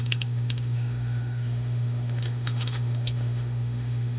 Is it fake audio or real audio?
fake